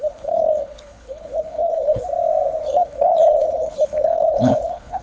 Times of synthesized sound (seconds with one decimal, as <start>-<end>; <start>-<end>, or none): 0.0-2.0; 2.6-5.0